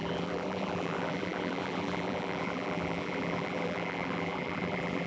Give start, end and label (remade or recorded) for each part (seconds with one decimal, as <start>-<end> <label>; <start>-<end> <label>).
0.0-5.1 remade